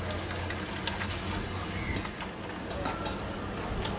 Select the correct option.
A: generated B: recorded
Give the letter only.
B